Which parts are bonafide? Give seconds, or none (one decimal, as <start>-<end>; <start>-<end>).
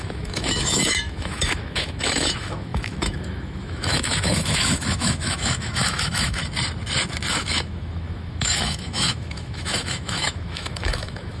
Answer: 6.4-7.3